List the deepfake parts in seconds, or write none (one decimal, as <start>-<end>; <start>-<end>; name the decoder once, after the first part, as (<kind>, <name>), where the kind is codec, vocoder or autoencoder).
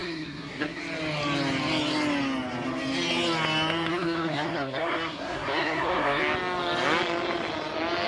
0.0-0.8 (codec, SNAC); 3.9-6.2